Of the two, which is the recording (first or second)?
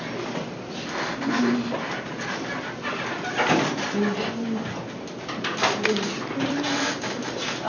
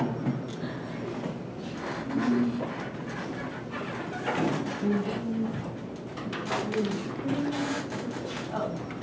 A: second